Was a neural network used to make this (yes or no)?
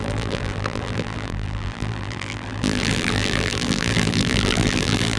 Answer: yes